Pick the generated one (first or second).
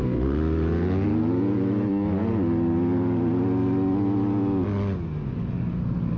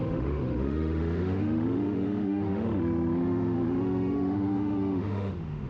second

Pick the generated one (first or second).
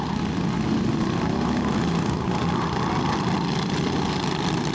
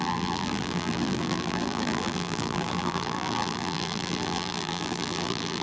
second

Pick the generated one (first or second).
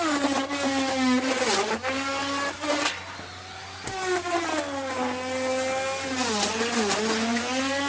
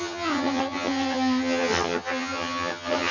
second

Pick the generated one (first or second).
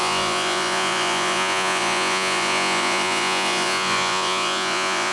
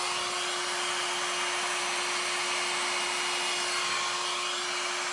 first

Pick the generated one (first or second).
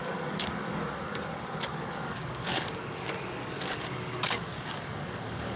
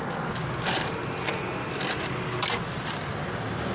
first